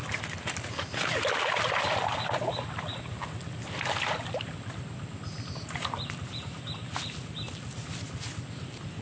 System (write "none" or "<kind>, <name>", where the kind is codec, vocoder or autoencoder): none